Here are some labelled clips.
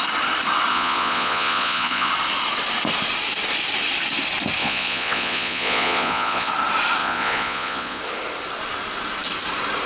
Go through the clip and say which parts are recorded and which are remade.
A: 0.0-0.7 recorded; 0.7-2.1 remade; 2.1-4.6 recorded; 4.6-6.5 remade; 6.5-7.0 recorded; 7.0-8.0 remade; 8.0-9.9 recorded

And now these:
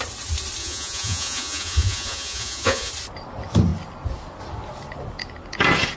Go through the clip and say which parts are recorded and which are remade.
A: 0.0-0.6 recorded; 0.6-2.9 remade; 2.9-6.0 recorded

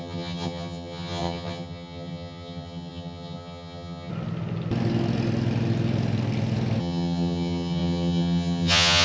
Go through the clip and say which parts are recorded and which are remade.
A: 0.0-4.1 remade; 4.1-6.8 recorded; 6.8-9.0 remade

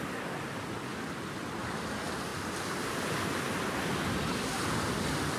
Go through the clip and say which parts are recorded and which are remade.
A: 0.0-0.9 recorded; 0.9-1.6 remade; 1.6-5.4 recorded